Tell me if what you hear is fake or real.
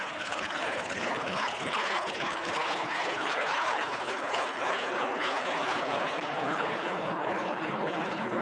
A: fake